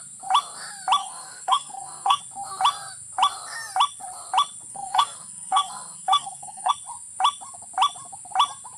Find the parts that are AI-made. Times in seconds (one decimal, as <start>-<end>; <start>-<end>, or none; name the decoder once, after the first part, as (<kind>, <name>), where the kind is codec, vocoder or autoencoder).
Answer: 1.0-2.2 (codec, SNAC); 4.7-6.7